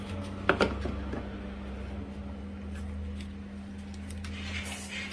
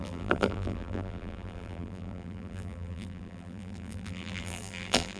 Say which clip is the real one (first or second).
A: first